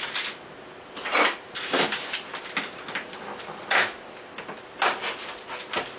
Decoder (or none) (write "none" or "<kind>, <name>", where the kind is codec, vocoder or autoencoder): none